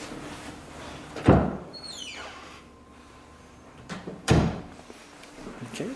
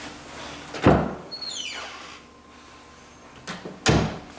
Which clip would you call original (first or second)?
second